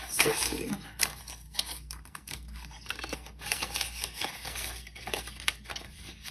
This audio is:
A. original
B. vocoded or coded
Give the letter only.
B